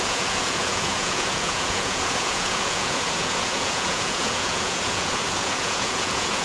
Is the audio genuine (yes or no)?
no